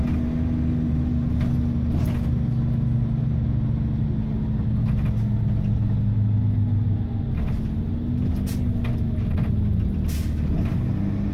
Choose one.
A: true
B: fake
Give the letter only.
A